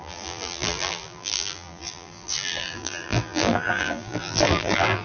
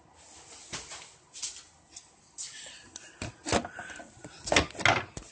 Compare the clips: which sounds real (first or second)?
second